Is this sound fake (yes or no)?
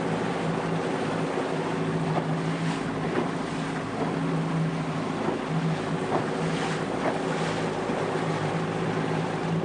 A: no